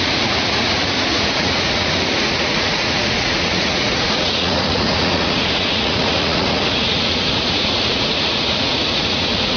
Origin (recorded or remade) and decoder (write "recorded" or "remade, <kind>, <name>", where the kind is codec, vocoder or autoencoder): remade, vocoder, Vocos